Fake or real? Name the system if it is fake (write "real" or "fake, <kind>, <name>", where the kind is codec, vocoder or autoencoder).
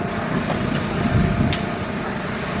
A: fake, vocoder, BigVGAN v2